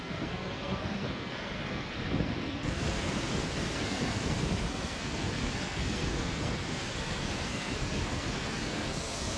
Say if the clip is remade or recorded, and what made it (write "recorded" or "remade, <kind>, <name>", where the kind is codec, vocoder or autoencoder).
remade, codec, SNAC